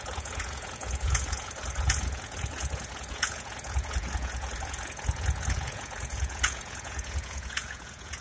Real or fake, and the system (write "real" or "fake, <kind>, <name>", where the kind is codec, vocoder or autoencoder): fake, vocoder, Vocos